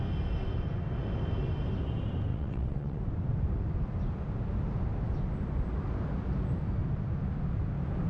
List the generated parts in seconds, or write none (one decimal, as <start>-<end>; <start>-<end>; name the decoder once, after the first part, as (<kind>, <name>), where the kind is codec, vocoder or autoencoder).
2.3-3.0 (vocoder, WaveNeXt)